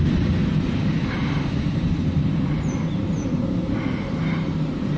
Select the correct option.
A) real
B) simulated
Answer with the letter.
B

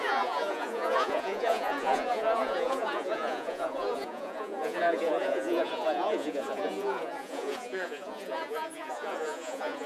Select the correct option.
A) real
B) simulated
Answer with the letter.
B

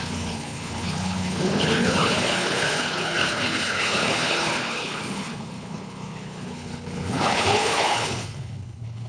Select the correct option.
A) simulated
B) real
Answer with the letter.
A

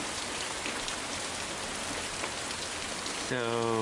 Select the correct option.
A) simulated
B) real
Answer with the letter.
B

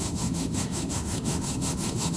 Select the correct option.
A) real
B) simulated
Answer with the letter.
B